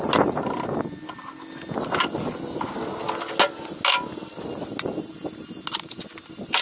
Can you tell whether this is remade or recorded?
recorded